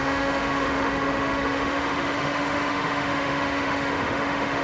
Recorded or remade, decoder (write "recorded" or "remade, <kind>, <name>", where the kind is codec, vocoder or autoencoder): remade, autoencoder, DAC-VAE